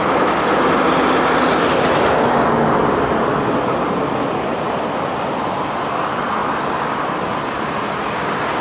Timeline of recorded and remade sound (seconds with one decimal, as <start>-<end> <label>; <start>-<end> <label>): 0.0-8.6 recorded